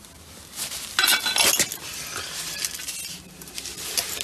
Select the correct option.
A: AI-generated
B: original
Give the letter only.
B